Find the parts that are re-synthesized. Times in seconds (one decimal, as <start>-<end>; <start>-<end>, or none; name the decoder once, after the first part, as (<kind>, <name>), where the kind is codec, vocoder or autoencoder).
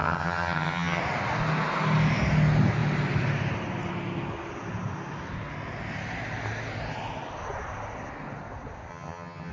0.0-1.0 (vocoder, HiFi-GAN); 8.9-9.5